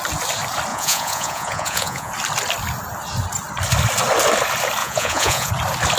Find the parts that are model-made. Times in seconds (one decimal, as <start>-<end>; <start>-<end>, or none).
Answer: 0.7-2.1; 4.8-5.5